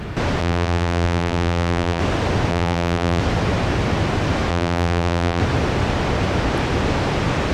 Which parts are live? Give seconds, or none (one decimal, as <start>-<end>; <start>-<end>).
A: 0.0-0.4; 2.0-2.5; 3.2-4.5; 5.4-7.5